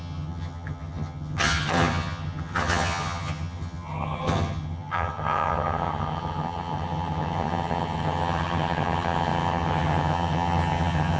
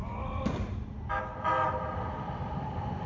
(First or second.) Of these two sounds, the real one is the second